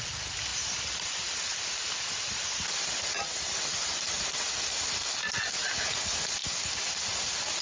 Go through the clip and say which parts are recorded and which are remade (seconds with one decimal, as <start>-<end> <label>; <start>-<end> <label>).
0.0-7.6 recorded